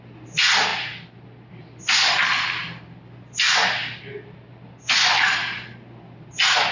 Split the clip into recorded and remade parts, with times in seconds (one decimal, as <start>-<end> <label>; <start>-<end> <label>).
0.0-6.7 recorded